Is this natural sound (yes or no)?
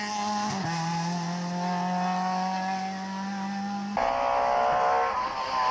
yes